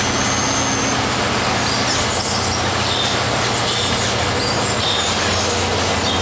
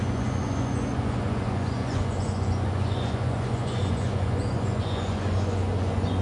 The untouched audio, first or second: first